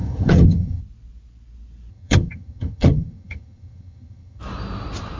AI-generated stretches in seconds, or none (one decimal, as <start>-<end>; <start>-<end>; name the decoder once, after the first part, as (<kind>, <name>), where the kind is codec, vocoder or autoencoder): 0.0-0.8 (vocoder, HiFi-GAN); 1.9-4.4